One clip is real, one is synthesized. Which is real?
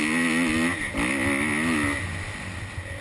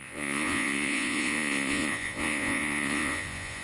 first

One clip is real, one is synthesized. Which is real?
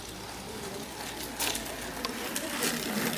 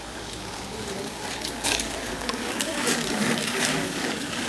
first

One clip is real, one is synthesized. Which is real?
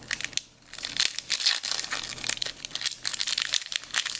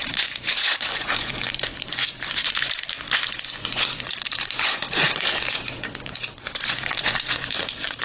first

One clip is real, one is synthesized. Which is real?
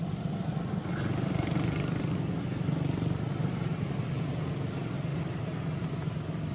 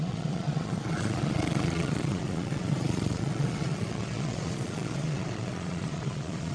first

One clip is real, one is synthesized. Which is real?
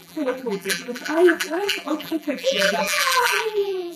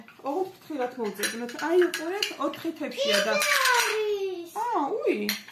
second